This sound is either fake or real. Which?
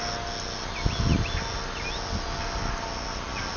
real